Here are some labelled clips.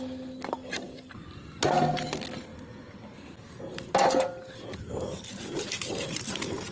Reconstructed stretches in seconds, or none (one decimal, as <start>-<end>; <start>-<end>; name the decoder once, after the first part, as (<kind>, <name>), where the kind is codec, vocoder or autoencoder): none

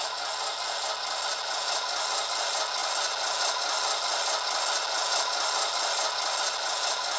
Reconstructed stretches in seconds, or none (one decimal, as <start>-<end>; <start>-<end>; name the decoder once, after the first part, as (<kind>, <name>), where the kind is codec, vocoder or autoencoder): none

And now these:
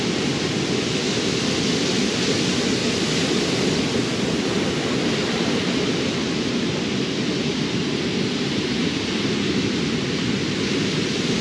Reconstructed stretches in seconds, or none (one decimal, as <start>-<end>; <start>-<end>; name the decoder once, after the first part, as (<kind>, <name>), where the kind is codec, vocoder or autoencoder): none

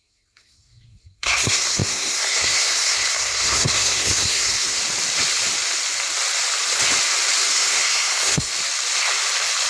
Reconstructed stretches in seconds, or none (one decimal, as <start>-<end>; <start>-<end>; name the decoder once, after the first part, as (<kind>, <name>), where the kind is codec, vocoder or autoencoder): 0.0-4.8 (codec, SNAC); 7.5-8.5

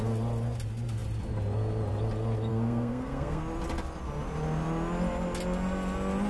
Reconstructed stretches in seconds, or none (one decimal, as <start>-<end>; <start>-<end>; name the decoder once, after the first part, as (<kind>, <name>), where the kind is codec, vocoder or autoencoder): 2.5-3.4 (codec, SNAC)